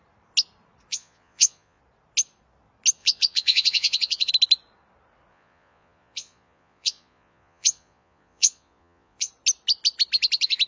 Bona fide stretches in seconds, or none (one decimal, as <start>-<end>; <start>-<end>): 0.0-0.9; 1.8-3.0; 4.3-5.3; 9.3-10.7